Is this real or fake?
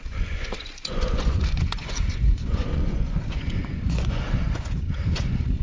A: fake